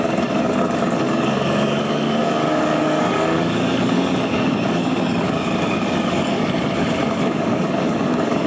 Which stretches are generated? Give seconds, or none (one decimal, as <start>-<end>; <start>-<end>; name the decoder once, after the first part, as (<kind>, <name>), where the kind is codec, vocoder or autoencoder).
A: 0.0-8.5 (codec, DAC)